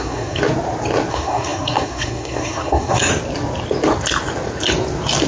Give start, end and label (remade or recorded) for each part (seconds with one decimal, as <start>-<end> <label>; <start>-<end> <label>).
0.0-0.4 remade; 0.4-1.1 recorded; 1.1-3.1 remade; 3.1-5.3 recorded